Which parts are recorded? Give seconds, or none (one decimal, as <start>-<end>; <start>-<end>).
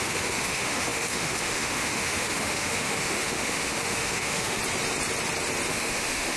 4.6-5.7